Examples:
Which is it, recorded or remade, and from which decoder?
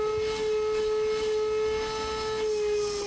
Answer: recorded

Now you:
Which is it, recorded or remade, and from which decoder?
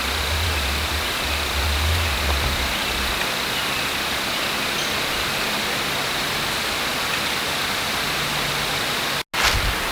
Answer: recorded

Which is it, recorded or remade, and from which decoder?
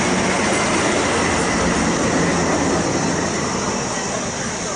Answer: recorded